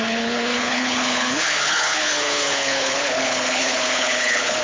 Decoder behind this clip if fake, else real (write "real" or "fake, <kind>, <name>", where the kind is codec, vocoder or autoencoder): fake, codec, HILCodec